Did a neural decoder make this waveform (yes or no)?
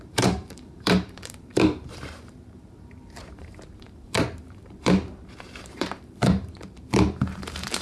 yes